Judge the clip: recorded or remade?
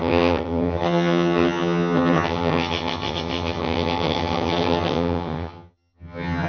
remade